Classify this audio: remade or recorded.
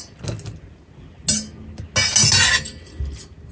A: recorded